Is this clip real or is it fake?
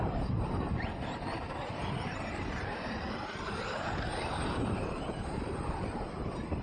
fake